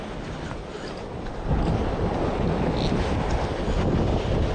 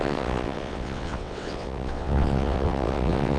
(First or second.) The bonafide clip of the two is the first